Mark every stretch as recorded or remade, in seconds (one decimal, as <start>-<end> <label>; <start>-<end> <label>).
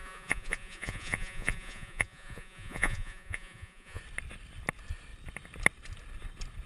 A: 0.0-4.0 remade; 4.0-6.7 recorded